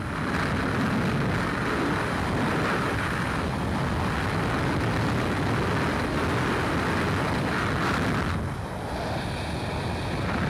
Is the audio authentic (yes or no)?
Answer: yes